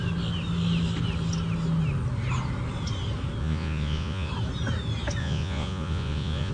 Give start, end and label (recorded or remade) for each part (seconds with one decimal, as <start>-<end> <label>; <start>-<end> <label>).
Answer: 0.0-3.4 recorded; 3.4-4.3 remade; 4.3-5.2 recorded; 5.2-6.5 remade